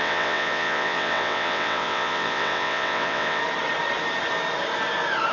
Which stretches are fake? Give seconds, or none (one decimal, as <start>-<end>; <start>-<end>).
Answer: 0.0-3.4